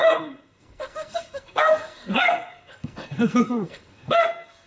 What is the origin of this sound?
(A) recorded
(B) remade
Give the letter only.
B